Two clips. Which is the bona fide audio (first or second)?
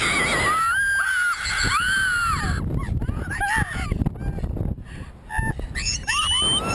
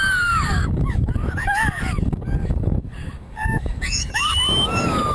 first